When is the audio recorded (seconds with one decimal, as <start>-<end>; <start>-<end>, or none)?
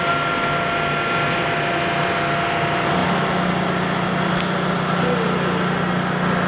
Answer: 0.0-6.5